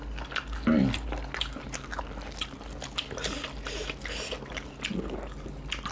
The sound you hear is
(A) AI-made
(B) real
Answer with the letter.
B